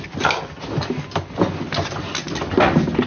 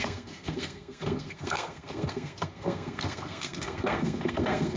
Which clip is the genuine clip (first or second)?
first